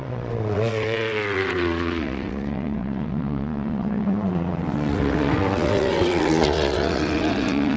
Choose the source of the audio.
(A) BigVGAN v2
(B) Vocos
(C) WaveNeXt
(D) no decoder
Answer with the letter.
C